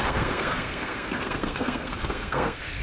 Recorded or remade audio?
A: remade